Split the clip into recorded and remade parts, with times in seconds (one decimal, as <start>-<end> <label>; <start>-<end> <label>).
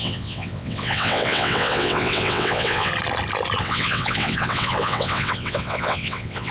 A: 0.0-2.9 remade; 2.9-3.6 recorded; 3.6-6.5 remade